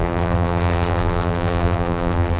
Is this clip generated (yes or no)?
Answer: yes